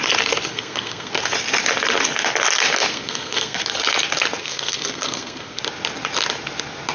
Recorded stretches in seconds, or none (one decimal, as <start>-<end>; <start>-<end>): 0.0-0.5; 1.1-2.9; 3.6-4.4; 5.6-6.9